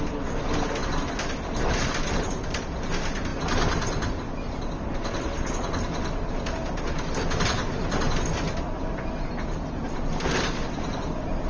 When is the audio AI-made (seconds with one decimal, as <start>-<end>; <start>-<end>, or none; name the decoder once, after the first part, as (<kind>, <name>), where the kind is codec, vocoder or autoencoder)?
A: 0.8-2.6 (vocoder, BigVGAN v2)